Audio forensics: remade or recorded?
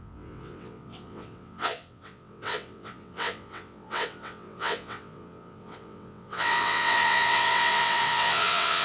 remade